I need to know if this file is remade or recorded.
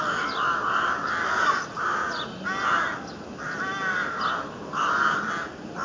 recorded